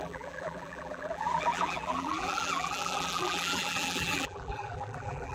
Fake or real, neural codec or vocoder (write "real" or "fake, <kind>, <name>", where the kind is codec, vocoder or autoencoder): fake, vocoder, BigVGAN v2